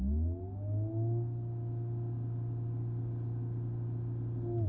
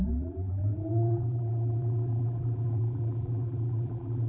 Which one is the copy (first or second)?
second